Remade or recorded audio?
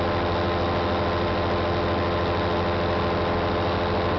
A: recorded